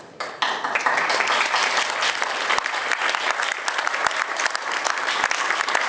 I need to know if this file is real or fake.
real